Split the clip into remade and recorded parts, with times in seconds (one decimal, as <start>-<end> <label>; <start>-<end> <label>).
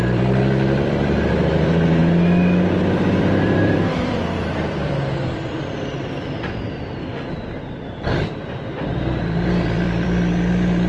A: 0.0-2.0 remade; 2.0-2.8 recorded; 2.8-10.9 remade